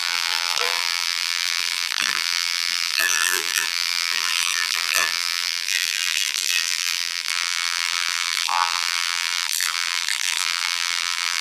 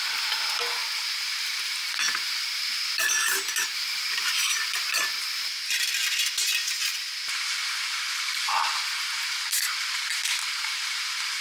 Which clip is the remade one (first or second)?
first